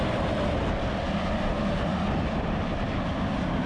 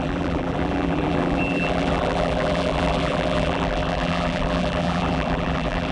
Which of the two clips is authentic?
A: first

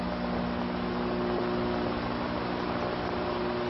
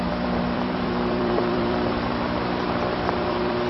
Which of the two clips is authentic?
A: first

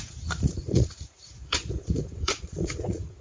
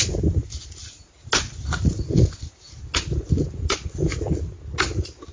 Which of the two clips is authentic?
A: second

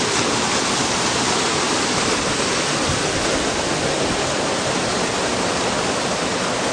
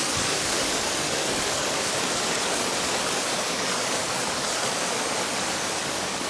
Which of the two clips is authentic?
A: first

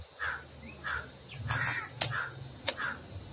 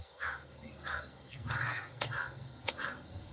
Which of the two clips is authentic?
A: first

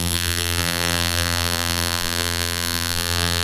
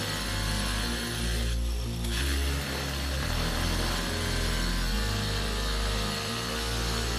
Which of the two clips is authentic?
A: second